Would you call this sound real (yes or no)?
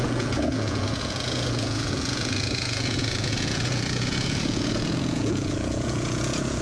no